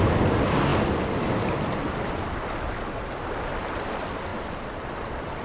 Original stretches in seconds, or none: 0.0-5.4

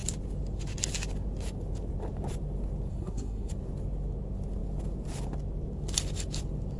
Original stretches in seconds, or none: 0.0-2.9; 3.5-6.8